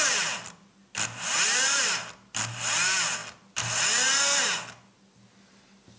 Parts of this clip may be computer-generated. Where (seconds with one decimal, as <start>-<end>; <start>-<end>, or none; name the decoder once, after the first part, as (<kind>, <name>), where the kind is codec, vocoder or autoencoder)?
none